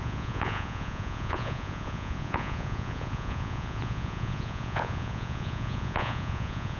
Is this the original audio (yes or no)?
no